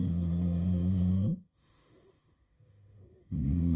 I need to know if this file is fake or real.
fake